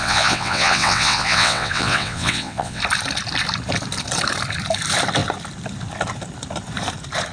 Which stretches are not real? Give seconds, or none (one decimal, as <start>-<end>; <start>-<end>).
0.0-2.8